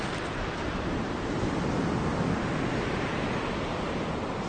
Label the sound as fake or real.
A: real